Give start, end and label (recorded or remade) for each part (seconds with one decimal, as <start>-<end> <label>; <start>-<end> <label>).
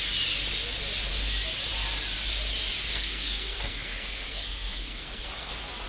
0.0-2.9 recorded; 2.9-5.5 remade; 5.5-5.9 recorded